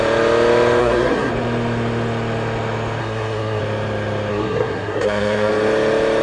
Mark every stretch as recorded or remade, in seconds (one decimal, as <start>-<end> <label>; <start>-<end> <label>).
0.0-0.8 recorded; 0.8-1.3 remade; 1.3-3.0 recorded; 3.0-3.6 remade; 3.6-4.3 recorded; 4.3-5.5 remade; 5.5-6.2 recorded